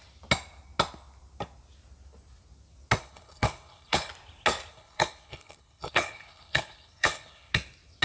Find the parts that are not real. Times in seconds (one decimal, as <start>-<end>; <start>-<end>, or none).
3.0-4.1; 4.7-7.5